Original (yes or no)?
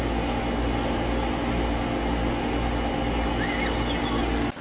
yes